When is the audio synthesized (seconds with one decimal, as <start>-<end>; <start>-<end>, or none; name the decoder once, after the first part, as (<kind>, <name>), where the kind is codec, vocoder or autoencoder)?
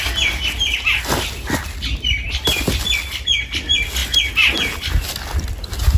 none